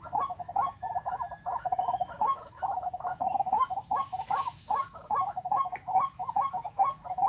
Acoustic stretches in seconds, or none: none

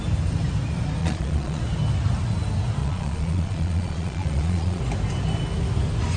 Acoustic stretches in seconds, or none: 0.0-1.0; 1.6-2.8; 4.8-6.2

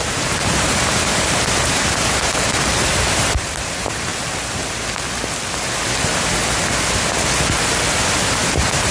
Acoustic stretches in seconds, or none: 4.1-6.0; 6.4-8.0

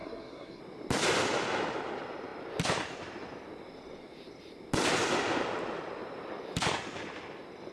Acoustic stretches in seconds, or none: 0.6-7.7

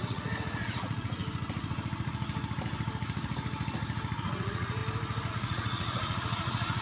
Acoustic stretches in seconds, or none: 1.2-4.2; 4.8-5.3

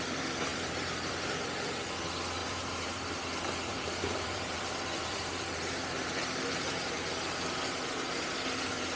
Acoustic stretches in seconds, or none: 0.0-0.5; 1.1-2.4; 3.2-3.7; 7.0-9.0